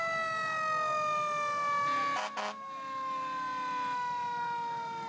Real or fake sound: real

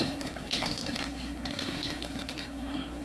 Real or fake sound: fake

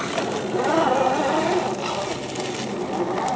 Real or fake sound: real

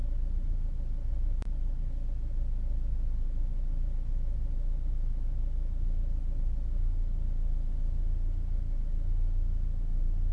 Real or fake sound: real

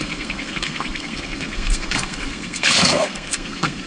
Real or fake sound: fake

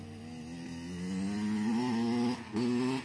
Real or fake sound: real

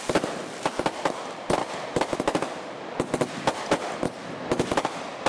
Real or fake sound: real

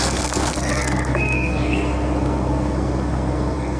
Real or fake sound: fake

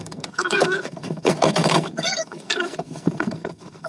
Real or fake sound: fake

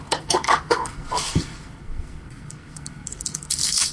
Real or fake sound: fake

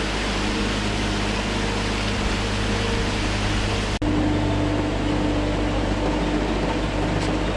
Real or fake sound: real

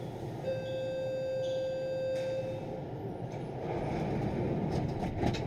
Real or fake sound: real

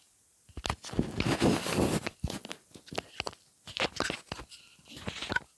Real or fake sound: real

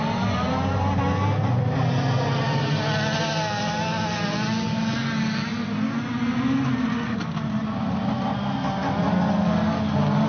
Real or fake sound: real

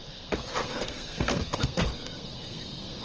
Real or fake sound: fake